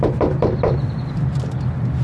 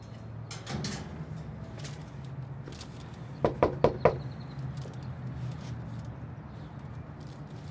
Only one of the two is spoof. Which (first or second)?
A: first